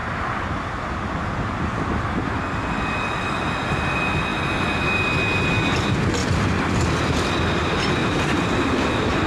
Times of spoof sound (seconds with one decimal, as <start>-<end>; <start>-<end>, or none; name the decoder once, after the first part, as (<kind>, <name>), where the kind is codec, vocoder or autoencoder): 0.0-2.3 (vocoder, BigVGAN v2); 6.2-7.3; 8.0-9.3